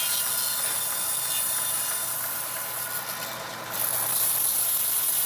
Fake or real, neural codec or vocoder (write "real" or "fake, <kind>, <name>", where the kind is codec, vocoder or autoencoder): real